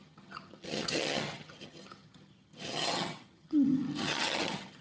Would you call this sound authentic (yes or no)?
no